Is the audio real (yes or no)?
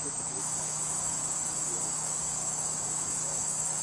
no